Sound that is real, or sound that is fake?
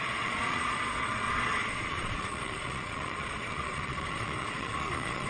fake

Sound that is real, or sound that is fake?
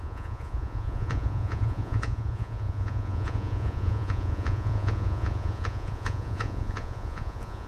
fake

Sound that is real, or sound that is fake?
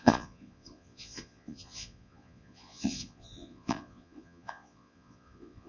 fake